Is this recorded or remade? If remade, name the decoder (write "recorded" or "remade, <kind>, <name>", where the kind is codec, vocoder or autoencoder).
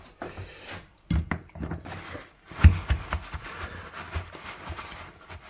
recorded